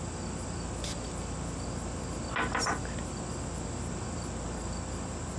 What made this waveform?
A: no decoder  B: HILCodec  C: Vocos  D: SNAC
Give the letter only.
A